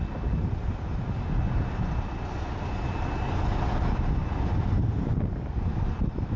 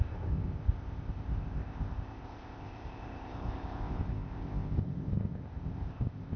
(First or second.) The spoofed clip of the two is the second